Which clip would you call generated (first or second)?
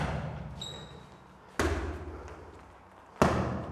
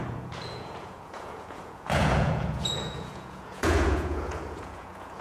second